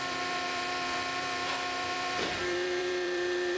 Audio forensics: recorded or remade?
remade